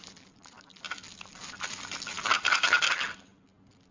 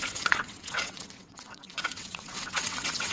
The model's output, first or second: second